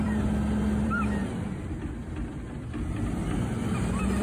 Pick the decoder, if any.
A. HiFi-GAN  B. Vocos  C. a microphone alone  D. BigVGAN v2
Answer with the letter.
D